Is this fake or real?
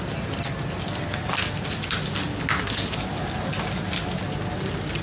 real